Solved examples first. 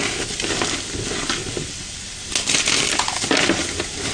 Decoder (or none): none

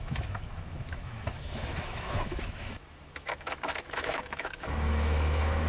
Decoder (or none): autoencoder, DAC-VAE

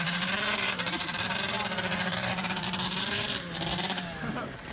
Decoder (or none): vocoder, BigVGAN v2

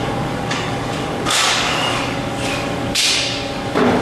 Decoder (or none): codec, DAC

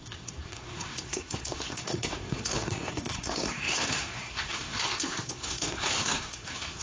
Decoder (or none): codec, SNAC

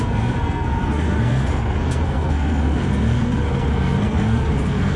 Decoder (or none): codec, SNAC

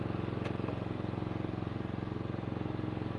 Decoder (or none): none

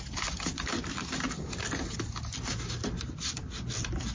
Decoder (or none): none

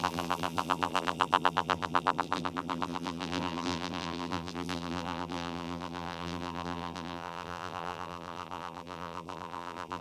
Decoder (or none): vocoder, BigVGAN v2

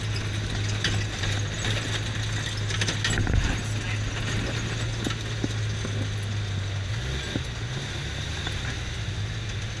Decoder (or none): none